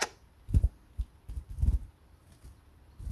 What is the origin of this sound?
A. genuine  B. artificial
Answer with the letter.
A